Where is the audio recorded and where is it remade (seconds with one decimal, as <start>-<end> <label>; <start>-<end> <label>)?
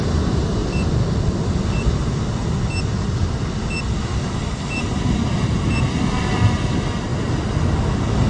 0.0-8.3 recorded